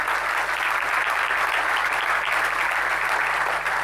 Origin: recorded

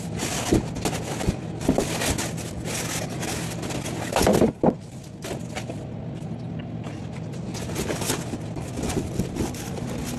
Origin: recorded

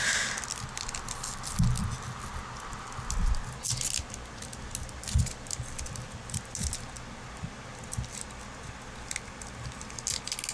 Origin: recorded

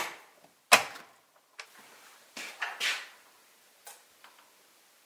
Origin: recorded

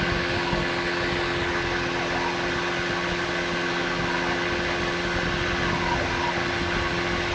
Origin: recorded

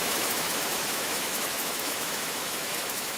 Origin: remade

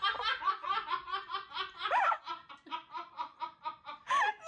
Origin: recorded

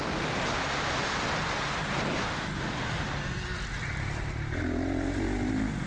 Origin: recorded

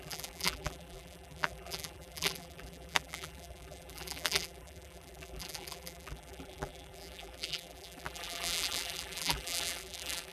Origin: remade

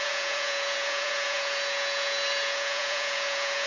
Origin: remade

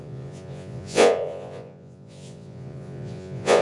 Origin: remade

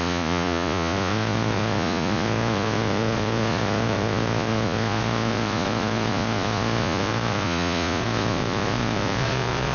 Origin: remade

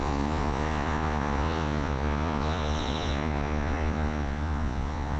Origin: remade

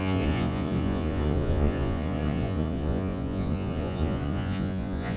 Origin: remade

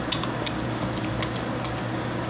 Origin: recorded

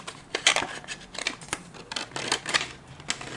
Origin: recorded